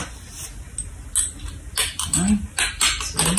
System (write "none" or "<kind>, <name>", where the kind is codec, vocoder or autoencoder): none